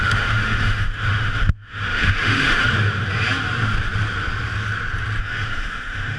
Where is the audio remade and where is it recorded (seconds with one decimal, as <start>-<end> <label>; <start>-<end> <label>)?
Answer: 0.0-2.6 remade; 2.6-5.2 recorded; 5.2-6.2 remade